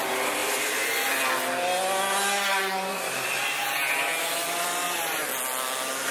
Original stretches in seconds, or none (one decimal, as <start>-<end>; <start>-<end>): 0.0-0.4; 1.2-2.9; 3.6-6.1